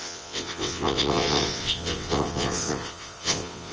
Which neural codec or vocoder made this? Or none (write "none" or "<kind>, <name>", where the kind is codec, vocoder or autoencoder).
vocoder, WaveNeXt